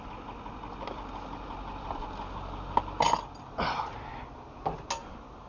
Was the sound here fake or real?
real